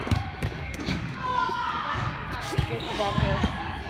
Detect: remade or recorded remade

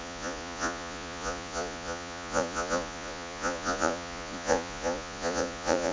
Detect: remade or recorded remade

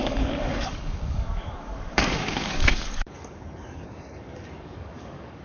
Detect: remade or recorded remade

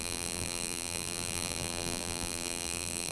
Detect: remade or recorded remade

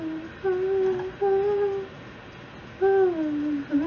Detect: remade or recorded recorded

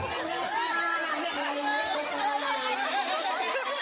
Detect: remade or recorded recorded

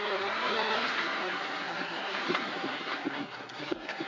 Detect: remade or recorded remade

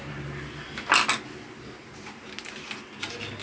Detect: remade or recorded recorded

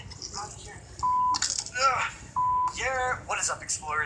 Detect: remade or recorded recorded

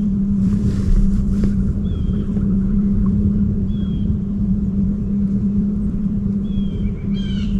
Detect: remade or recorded remade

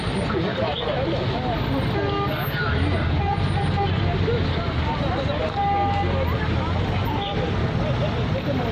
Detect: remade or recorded recorded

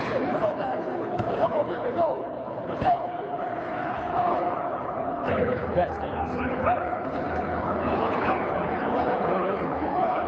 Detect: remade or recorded remade